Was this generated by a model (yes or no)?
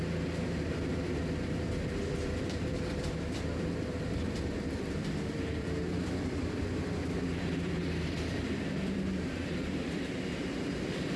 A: yes